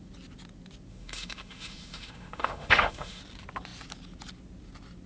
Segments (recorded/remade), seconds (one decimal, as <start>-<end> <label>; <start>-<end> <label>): 0.0-0.9 recorded; 0.9-3.2 remade; 3.2-5.1 recorded